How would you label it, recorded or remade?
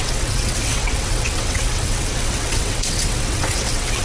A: remade